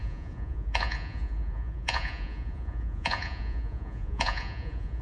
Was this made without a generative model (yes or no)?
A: no